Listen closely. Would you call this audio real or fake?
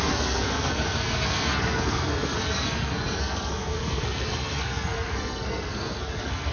fake